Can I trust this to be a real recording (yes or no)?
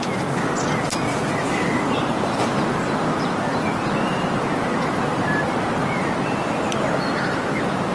yes